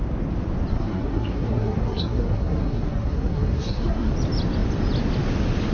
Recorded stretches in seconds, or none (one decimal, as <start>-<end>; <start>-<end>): 0.0-0.7; 4.1-5.7